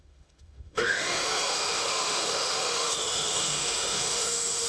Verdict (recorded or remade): remade